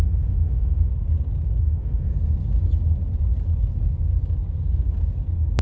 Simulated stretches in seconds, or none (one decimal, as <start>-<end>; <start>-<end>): 0.0-0.9; 1.6-2.1